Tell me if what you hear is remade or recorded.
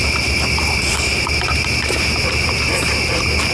recorded